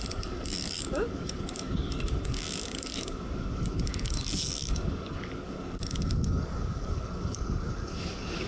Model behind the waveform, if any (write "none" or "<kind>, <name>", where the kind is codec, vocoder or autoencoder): codec, DAC